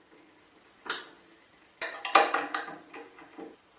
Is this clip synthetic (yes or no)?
no